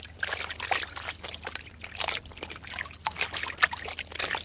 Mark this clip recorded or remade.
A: recorded